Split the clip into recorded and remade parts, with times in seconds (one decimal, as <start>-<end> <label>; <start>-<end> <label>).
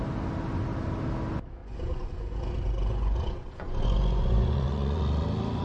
0.0-1.6 recorded; 1.6-5.0 remade; 5.0-5.6 recorded